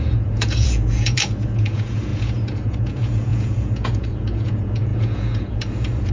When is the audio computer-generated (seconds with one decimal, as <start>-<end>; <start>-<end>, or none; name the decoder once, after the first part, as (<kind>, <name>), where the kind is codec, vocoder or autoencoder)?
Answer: 0.0-6.1 (vocoder, Vocos)